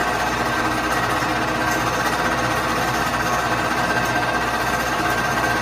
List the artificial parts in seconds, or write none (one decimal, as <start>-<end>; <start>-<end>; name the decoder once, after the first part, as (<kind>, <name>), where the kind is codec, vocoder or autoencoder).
none